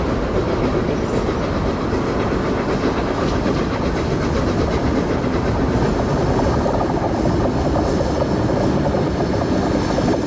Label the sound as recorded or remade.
recorded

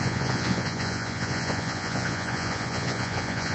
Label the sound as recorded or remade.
remade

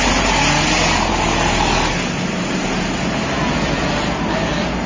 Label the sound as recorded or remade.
recorded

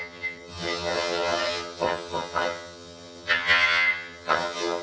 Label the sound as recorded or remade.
remade